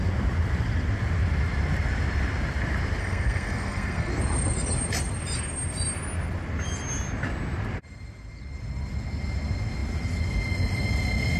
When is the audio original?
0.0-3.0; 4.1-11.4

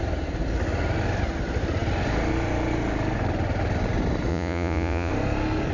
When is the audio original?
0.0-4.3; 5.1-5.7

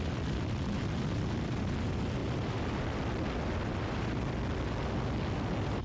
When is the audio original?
0.0-5.8

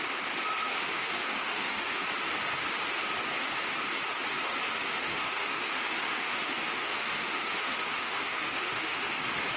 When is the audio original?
0.0-0.6; 2.0-4.7; 9.2-9.6